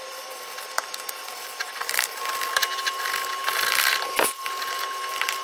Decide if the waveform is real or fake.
fake